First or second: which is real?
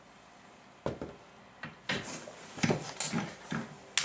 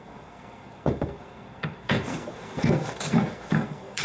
first